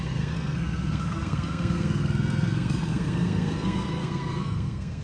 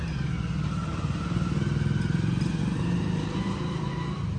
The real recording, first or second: second